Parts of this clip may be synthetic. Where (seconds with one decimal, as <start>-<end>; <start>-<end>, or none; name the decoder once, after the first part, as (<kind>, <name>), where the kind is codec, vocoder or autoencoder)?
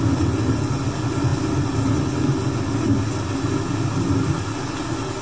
none